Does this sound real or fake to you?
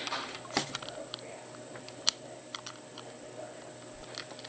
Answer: fake